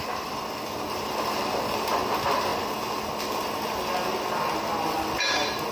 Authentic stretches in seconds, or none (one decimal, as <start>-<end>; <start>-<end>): 0.0-5.7